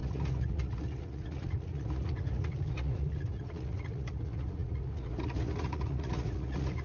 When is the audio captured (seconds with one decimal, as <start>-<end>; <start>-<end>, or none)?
none